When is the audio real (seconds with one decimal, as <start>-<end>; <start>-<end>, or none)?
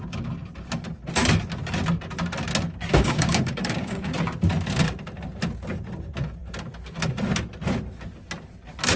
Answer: 0.0-2.9; 4.1-9.0